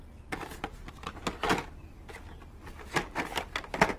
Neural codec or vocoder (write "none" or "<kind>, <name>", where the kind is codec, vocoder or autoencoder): none